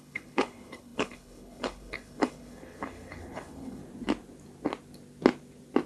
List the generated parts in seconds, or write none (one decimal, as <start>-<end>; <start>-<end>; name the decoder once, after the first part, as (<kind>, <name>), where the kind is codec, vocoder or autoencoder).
0.0-3.8 (codec, HILCodec)